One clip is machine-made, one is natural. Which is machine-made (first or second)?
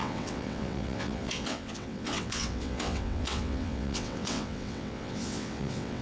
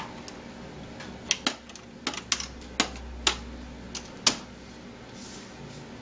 first